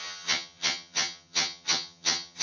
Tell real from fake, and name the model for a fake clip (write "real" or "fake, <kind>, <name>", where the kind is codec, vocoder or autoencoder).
fake, vocoder, HiFi-GAN